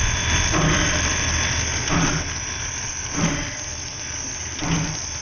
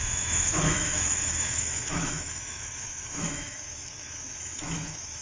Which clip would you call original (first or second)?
first